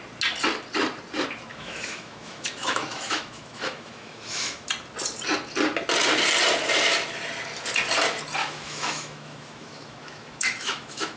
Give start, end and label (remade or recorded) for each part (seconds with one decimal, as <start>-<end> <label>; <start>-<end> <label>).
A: 0.0-1.5 recorded; 1.5-4.7 remade; 4.7-8.4 recorded; 8.4-11.2 remade